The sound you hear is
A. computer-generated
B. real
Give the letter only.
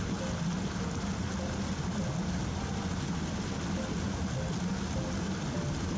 B